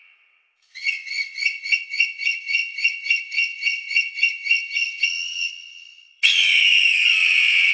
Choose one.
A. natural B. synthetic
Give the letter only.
B